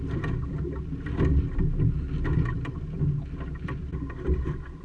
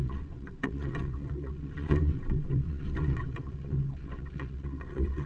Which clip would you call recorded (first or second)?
first